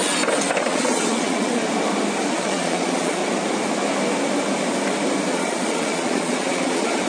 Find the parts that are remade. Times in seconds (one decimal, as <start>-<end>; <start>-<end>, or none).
0.6-1.6; 2.3-3.2; 5.3-7.1